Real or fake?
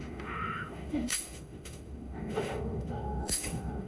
fake